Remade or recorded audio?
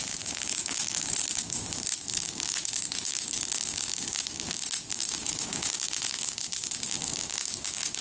remade